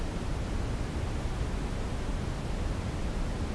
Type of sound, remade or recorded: recorded